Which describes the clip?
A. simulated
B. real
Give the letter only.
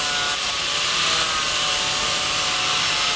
B